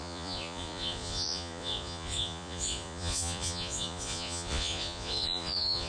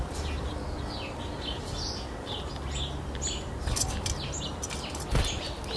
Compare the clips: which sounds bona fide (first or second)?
second